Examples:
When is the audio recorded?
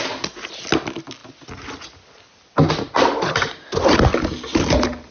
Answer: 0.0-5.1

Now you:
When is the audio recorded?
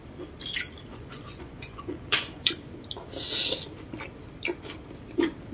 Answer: 0.0-0.9; 2.5-5.5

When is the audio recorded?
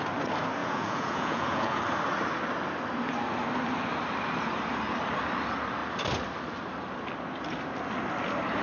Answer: 0.0-0.6; 1.8-8.6